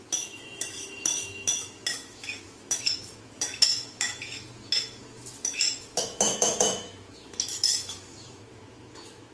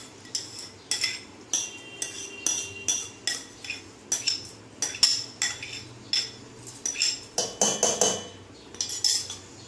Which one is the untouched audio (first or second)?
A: second